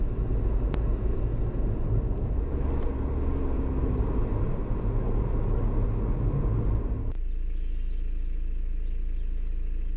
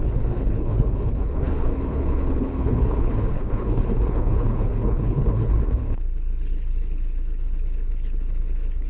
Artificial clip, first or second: second